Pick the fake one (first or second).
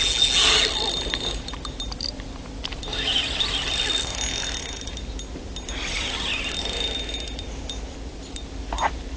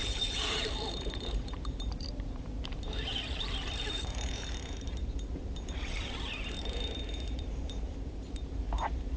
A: second